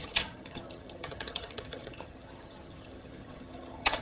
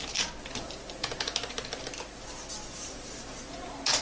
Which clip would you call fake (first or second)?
first